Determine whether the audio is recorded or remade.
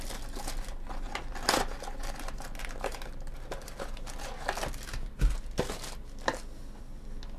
recorded